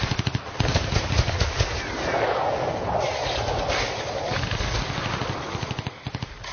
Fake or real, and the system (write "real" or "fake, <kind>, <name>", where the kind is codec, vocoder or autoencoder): real